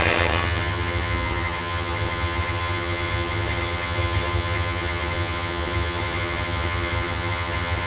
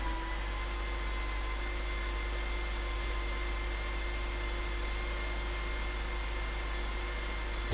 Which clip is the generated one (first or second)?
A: first